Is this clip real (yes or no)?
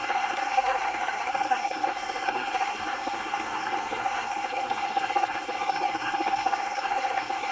no